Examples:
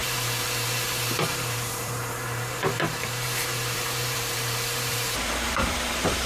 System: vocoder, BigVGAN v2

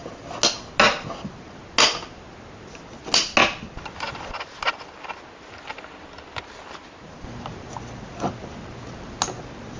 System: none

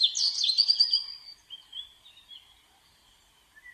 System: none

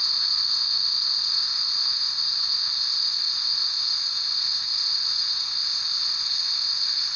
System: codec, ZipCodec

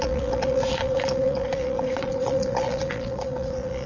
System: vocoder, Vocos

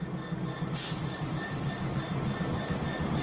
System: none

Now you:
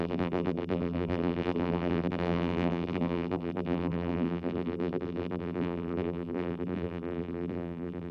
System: vocoder, BigVGAN v2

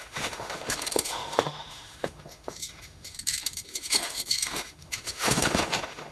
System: autoencoder, DAC-VAE